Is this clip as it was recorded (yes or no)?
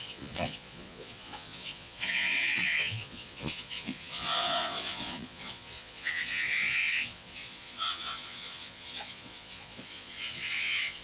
no